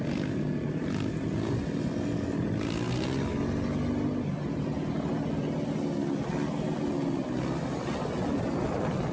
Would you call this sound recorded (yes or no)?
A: yes